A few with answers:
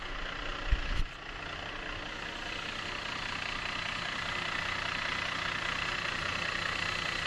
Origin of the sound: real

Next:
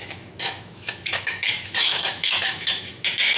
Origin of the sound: fake